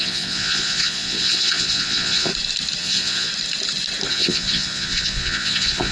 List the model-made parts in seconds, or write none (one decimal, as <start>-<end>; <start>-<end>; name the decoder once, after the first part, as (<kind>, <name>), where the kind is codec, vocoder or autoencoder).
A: 0.0-2.3 (vocoder, Vocos); 2.8-3.3; 4.1-5.9